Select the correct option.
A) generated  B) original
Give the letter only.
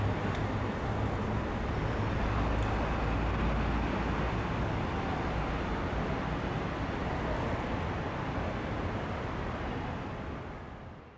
B